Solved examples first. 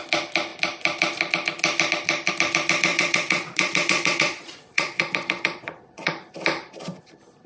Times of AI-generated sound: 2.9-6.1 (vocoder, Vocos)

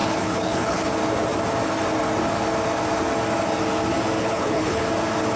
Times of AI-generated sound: 0.0-0.9 (codec, HILCodec); 4.2-4.8

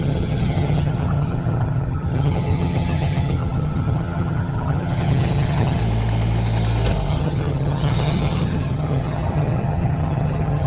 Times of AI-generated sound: 0.0-5.8 (vocoder, HiFi-GAN); 7.1-10.7

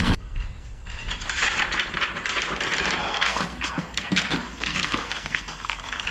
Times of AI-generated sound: 0.0-1.0 (codec, SNAC); 3.0-6.1

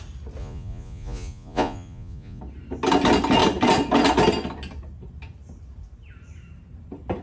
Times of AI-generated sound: 0.4-2.4 (vocoder, Vocos)